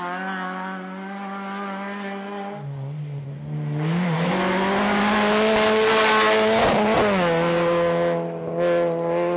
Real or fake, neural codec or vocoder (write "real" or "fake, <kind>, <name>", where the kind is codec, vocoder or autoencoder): real